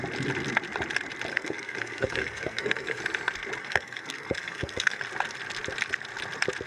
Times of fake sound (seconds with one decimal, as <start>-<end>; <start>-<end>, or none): 1.3-3.0; 3.6-5.0